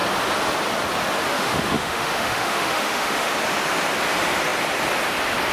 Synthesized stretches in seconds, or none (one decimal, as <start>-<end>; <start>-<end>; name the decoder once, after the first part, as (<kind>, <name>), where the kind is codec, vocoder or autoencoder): 1.3-3.3 (autoencoder, DAC-VAE)